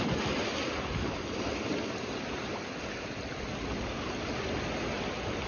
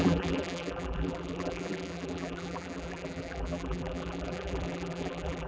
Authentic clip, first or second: first